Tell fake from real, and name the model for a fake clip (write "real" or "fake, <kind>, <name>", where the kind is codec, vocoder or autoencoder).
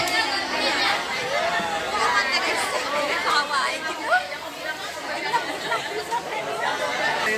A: real